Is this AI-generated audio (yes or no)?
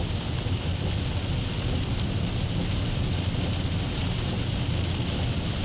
no